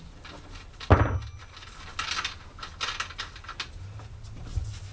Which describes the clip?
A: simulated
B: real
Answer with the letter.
B